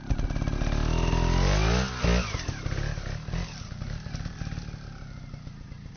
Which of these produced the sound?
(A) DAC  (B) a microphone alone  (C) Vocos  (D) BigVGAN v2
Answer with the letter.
B